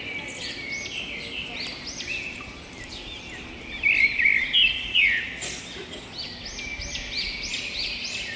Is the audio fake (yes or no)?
no